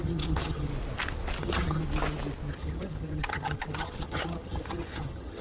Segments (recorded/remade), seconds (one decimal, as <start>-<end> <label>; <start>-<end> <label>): 0.0-0.7 remade; 0.7-1.4 recorded; 1.4-1.8 remade; 1.8-2.5 recorded; 2.5-5.4 remade